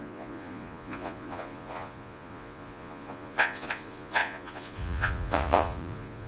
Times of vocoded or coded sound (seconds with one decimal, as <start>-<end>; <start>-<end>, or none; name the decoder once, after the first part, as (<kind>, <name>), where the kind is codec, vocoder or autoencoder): 0.0-6.3 (vocoder, Vocos)